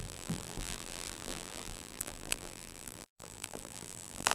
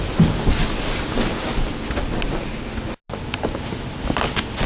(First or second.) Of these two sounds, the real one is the second